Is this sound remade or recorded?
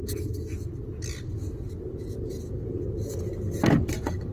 recorded